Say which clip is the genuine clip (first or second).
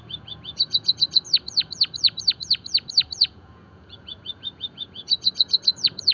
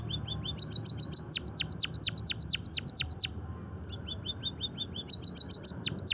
second